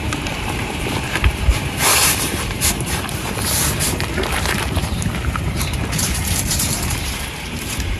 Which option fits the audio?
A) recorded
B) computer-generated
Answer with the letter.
B